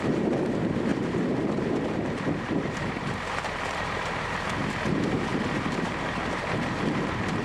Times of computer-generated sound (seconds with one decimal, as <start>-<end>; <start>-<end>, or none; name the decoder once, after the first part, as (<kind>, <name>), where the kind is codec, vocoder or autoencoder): 0.0-7.4 (vocoder, BigVGAN v2)